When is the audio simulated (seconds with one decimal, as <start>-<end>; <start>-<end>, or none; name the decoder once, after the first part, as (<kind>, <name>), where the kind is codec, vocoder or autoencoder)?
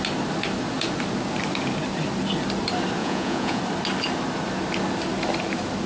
3.0-3.6 (vocoder, Vocos)